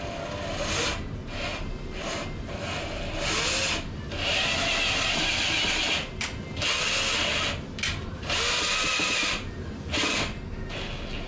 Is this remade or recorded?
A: recorded